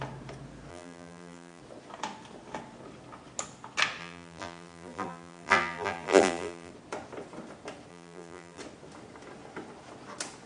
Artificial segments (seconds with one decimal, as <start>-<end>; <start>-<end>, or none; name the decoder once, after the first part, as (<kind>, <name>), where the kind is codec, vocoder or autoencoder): 0.7-1.6 (vocoder, BigVGAN v2); 4.0-6.7; 7.9-8.6